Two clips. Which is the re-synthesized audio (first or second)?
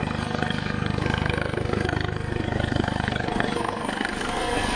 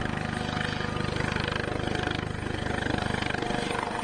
first